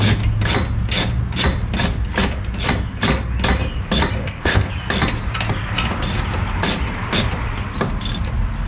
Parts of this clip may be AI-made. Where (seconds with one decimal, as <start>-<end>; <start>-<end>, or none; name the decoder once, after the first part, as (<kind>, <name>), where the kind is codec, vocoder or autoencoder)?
4.2-4.7 (codec, ZipCodec)